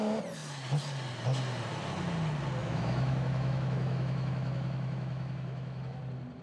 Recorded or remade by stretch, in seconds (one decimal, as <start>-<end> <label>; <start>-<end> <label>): 0.0-2.6 recorded; 2.6-6.0 remade; 6.0-6.4 recorded